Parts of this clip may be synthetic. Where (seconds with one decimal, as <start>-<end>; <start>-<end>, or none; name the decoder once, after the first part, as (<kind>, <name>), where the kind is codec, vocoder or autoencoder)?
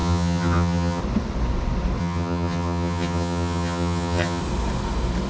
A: 0.0-1.0 (vocoder, HiFi-GAN); 2.0-4.4